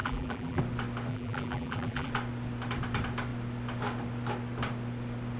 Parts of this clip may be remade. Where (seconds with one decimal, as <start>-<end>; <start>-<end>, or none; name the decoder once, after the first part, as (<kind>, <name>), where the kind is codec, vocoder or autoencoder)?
0.0-0.6 (vocoder, BigVGAN v2); 1.1-2.1